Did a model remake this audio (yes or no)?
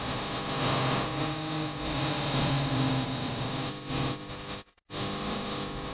no